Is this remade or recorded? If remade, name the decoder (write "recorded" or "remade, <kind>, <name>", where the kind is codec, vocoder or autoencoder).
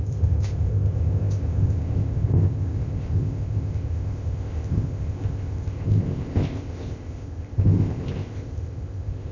remade, codec, ZipCodec